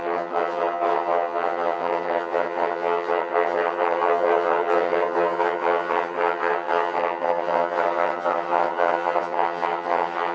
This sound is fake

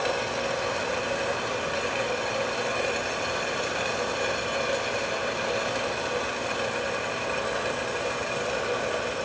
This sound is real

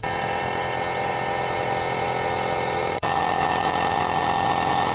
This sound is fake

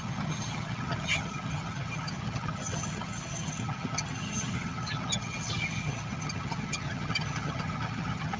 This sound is fake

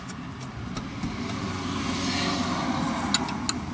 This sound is real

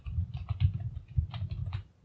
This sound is real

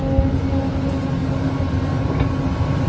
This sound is real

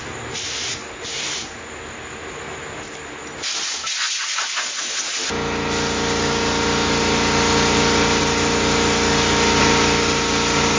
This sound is real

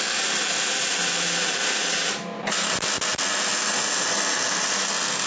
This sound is real